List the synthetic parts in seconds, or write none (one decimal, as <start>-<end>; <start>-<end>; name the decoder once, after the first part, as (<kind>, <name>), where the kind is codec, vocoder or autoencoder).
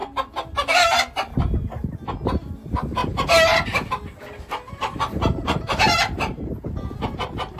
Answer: 3.0-3.9 (vocoder, BigVGAN v2); 5.4-7.6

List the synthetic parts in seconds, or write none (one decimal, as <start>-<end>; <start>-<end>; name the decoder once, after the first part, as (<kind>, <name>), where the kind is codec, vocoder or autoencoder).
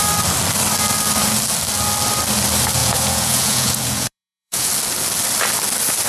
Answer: 2.8-4.7 (vocoder, Vocos)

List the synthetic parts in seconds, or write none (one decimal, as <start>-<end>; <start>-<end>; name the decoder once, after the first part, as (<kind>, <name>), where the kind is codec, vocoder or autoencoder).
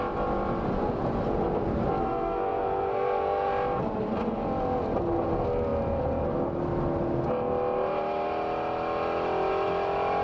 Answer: 2.0-3.5 (codec, SNAC)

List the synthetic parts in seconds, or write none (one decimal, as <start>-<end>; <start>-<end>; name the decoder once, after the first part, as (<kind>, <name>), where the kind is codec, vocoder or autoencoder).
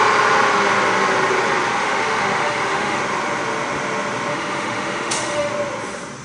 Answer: 1.8-3.0 (autoencoder, DAC-VAE); 4.3-5.5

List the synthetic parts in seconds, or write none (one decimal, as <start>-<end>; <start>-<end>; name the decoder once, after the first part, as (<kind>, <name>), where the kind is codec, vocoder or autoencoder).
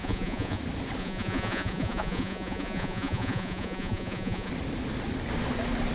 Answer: 0.0-0.6 (vocoder, Vocos); 1.0-4.5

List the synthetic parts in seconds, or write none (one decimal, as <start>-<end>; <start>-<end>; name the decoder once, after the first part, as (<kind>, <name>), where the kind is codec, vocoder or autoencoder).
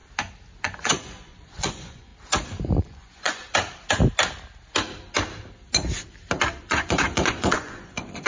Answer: 0.6-2.1 (vocoder, Vocos); 2.6-3.5; 6.6-8.3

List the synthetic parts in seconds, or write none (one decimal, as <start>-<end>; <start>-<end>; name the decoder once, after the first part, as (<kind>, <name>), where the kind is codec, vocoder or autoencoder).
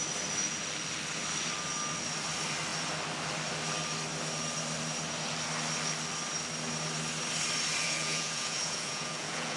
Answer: 7.8-9.6 (vocoder, Vocos)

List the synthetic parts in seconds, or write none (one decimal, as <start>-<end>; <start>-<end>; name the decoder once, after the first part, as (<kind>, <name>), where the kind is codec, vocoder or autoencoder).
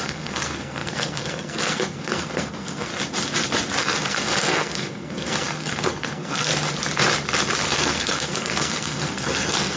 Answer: 0.0-2.9 (codec, SNAC); 3.8-6.5; 7.7-9.8